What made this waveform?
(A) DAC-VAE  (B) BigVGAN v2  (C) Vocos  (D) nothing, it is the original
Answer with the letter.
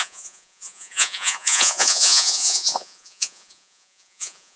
C